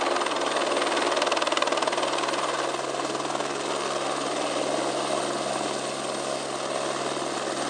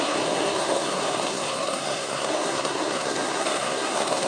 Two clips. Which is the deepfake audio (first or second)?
second